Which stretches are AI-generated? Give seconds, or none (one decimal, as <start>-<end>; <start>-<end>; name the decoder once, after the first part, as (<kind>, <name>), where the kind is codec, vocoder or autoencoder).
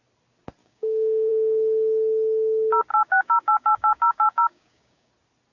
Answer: 0.6-1.3 (codec, DAC); 2.9-5.1